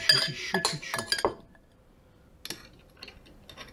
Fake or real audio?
real